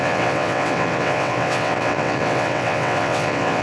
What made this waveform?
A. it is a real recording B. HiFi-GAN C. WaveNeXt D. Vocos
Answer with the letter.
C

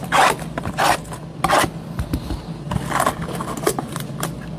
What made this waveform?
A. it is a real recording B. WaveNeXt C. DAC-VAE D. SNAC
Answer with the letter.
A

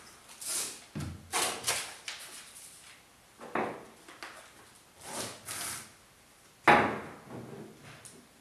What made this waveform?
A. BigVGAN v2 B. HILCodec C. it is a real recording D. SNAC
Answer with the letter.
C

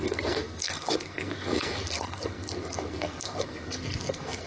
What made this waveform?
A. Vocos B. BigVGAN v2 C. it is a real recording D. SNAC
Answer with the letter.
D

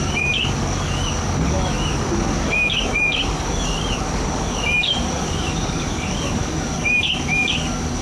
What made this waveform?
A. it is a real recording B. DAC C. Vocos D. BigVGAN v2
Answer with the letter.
B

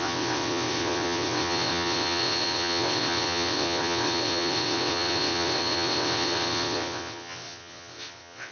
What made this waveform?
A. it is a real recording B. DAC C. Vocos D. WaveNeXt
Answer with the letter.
D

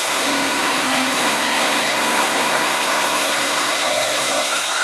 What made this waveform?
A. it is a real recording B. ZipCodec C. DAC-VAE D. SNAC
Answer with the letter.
D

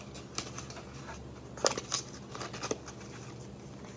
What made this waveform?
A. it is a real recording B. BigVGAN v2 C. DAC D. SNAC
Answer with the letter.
A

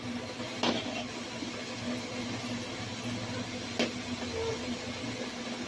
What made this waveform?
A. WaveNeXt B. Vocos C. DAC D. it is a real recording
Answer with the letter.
D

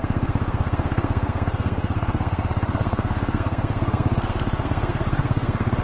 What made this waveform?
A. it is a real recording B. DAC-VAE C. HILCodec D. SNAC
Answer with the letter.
D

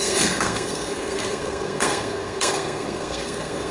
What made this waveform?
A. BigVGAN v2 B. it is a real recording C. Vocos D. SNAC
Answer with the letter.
D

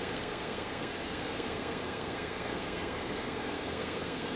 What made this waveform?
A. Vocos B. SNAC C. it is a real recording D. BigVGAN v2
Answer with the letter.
B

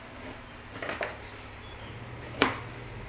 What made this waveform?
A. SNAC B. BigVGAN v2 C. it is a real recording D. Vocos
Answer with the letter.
C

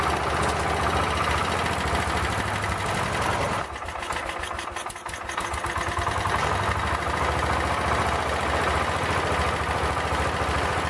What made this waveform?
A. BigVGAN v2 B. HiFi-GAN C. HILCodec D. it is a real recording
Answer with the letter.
D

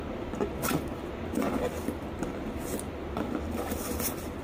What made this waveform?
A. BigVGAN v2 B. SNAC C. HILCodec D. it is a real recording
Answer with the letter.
D